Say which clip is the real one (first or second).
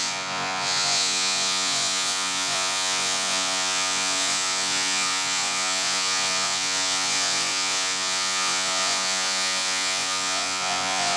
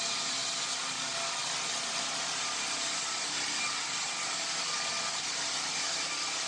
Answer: second